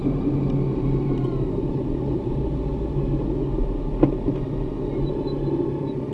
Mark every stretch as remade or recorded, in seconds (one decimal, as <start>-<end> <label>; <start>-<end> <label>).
0.0-6.1 recorded

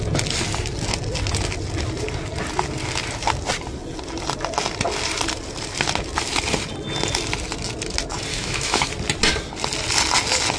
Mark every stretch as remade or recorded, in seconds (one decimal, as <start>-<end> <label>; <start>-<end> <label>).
0.0-8.3 recorded; 8.3-8.9 remade; 8.9-10.6 recorded

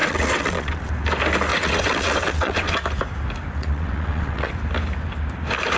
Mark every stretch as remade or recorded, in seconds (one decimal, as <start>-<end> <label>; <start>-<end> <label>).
0.0-0.9 remade; 0.9-1.5 recorded; 1.5-2.7 remade; 2.7-3.6 recorded; 3.6-4.5 remade; 4.5-5.8 recorded

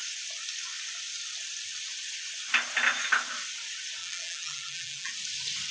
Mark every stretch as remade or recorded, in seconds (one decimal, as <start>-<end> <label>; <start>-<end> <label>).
0.0-4.0 recorded; 4.0-5.1 remade; 5.1-5.7 recorded

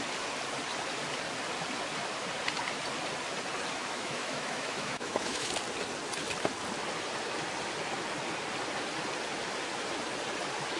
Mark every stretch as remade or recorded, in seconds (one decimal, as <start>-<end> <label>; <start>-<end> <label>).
0.0-3.8 recorded; 3.8-5.5 remade; 5.5-10.8 recorded

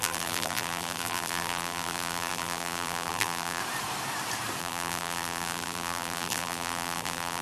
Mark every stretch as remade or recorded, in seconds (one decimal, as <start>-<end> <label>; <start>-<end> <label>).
0.0-3.6 remade; 3.6-4.6 recorded; 4.6-7.4 remade

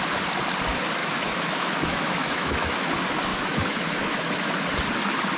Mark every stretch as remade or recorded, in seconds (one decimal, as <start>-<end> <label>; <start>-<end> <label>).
0.0-1.0 recorded; 1.0-2.9 remade; 2.9-3.3 recorded; 3.3-4.5 remade; 4.5-5.4 recorded